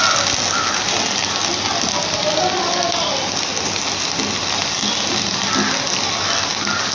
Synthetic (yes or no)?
no